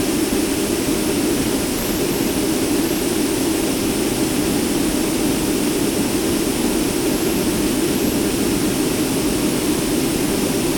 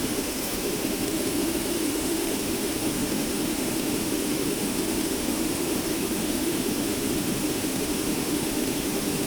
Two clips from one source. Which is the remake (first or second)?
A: second